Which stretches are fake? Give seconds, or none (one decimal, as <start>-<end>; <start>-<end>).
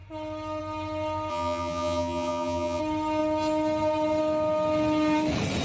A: 1.3-2.8